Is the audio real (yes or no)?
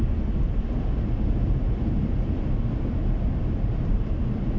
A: yes